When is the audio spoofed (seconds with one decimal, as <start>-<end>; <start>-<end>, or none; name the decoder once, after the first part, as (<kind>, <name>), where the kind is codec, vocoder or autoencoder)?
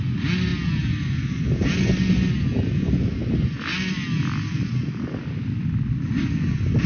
none